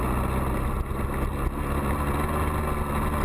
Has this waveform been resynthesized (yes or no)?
no